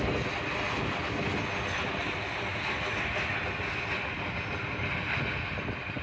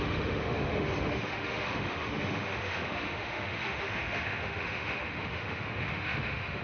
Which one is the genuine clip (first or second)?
first